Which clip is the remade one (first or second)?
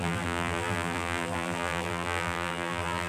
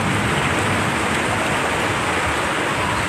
first